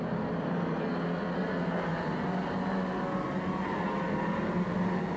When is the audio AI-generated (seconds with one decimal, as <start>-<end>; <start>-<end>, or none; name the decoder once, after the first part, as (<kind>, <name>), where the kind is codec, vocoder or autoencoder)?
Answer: none